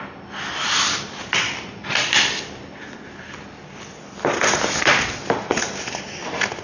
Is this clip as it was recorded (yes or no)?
yes